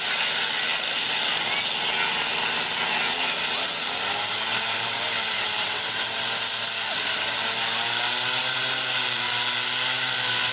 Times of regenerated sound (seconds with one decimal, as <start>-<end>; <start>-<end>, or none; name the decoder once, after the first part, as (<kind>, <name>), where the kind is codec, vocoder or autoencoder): 4.5-7.6 (vocoder, BigVGAN v2); 8.4-9.2